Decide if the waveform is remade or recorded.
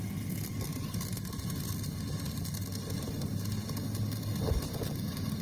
recorded